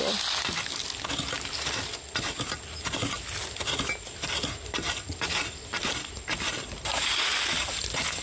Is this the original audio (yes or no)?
yes